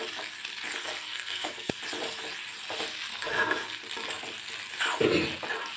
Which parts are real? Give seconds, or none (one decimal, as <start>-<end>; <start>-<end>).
0.0-0.8; 1.8-3.1; 3.8-5.8